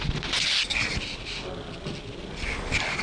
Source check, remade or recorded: recorded